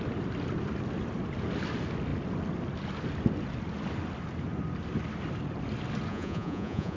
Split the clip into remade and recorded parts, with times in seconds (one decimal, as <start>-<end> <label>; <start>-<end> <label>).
0.0-6.1 recorded; 6.1-7.0 remade